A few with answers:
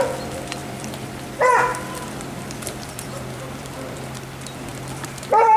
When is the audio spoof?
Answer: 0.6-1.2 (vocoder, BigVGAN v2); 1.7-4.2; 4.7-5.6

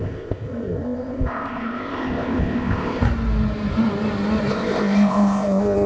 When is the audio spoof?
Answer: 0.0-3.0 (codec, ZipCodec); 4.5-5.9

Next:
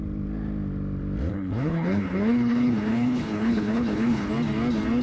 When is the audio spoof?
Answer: 1.3-4.3 (codec, HILCodec)

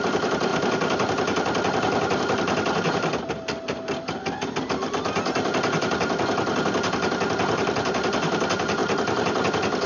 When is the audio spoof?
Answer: none

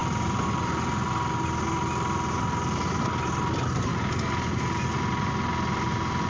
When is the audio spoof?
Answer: none